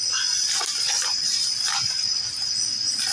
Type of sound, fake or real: real